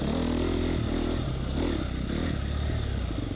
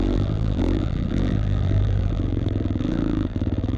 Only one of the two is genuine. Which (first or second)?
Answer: first